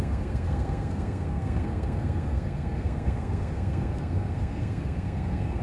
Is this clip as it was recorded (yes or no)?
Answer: no